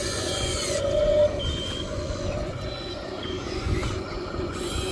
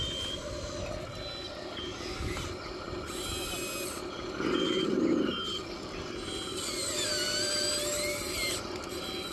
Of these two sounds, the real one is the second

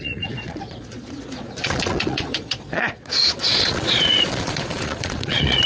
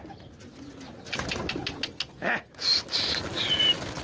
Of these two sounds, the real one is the second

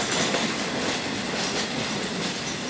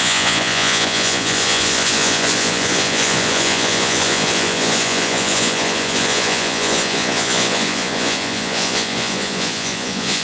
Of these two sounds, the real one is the first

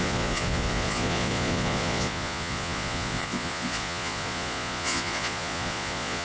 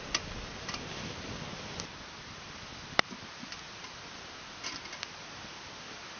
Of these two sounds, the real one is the second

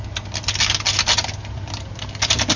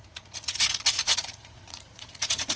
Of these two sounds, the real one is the first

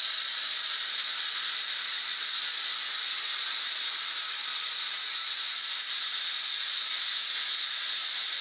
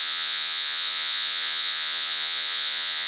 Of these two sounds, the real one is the first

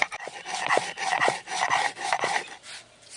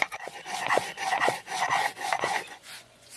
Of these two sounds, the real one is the first